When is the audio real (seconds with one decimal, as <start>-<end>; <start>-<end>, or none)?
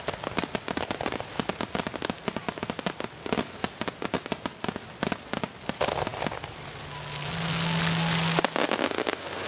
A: 0.0-9.5